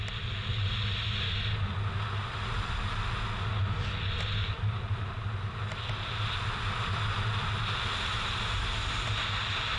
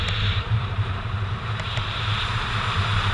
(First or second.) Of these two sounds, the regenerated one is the second